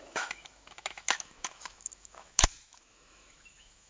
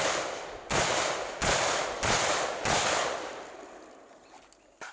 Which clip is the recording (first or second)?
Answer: second